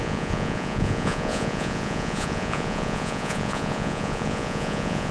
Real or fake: fake